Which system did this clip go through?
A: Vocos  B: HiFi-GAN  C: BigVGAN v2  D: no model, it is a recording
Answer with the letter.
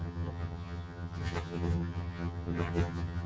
B